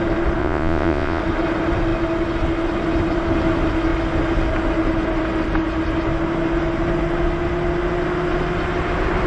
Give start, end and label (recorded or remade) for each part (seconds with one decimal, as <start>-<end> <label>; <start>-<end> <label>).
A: 0.0-0.4 recorded; 0.4-1.2 remade; 1.2-9.3 recorded